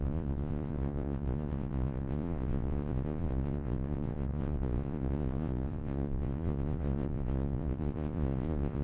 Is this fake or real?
fake